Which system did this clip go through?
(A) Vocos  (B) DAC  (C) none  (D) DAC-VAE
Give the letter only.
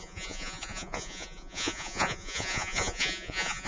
A